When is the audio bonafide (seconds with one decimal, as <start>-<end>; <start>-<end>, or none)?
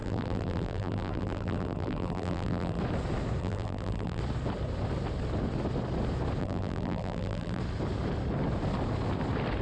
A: 2.8-3.4; 4.2-6.4; 7.6-9.6